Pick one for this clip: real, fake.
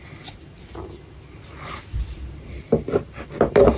real